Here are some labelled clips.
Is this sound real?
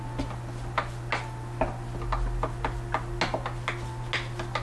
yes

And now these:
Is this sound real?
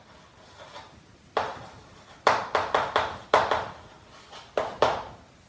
yes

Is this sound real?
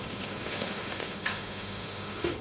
no